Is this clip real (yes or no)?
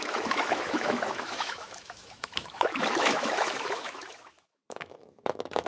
no